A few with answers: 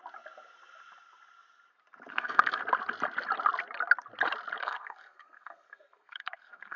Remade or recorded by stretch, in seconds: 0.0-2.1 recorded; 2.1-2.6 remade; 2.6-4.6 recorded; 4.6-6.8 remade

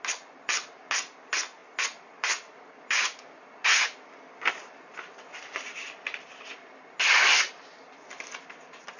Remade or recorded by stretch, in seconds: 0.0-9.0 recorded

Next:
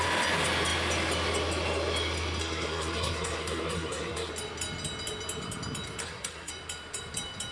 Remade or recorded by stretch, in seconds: 0.0-2.4 recorded; 2.4-4.3 remade; 4.3-6.0 recorded; 6.0-6.5 remade; 6.5-7.5 recorded